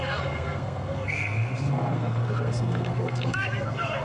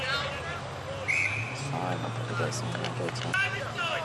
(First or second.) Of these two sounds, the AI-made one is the first